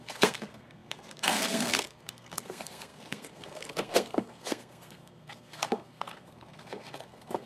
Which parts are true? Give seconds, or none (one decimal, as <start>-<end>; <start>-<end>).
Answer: none